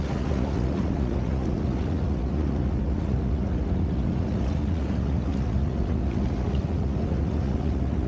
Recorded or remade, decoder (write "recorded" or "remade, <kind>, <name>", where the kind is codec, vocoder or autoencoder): remade, vocoder, Vocos